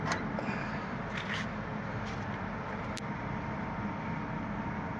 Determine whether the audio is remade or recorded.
recorded